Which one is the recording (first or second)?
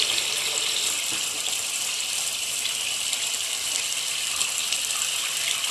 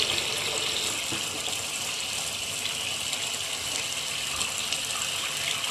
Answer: second